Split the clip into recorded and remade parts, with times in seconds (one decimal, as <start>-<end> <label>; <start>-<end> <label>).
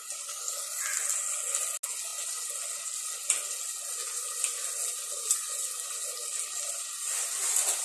0.0-7.8 recorded